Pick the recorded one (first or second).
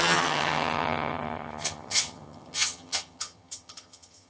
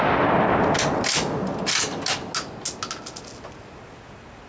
second